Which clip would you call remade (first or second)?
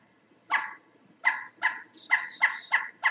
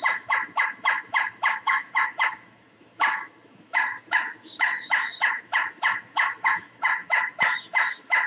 second